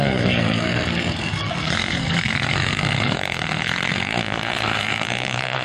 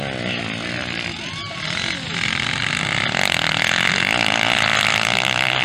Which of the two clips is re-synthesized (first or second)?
first